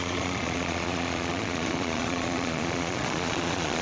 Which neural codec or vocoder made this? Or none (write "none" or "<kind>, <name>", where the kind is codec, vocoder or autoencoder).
vocoder, Vocos